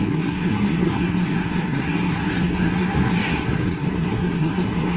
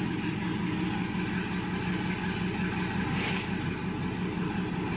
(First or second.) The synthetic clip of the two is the first